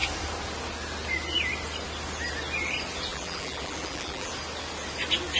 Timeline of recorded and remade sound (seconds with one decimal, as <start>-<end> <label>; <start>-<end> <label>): 0.0-3.1 recorded; 3.1-4.3 remade; 4.3-5.4 recorded